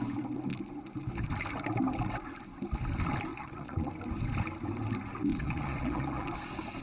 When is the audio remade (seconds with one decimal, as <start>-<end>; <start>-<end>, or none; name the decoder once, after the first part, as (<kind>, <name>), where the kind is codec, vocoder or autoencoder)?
3.3-3.9 (vocoder, Vocos); 5.3-6.3